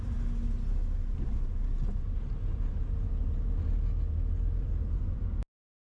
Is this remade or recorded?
recorded